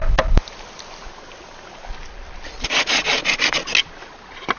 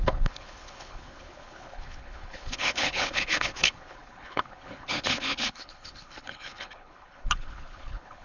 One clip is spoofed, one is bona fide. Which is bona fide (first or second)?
first